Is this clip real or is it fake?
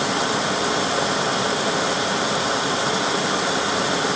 real